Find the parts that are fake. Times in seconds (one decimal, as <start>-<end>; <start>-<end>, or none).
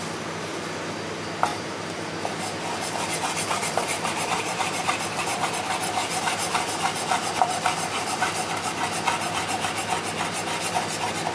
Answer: 1.5-5.5